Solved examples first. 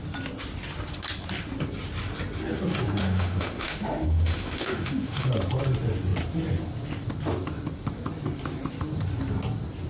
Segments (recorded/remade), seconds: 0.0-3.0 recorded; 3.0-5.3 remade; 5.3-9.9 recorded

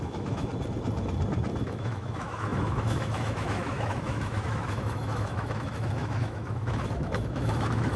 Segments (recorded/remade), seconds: 0.0-0.5 remade; 0.5-1.6 recorded; 1.6-8.0 remade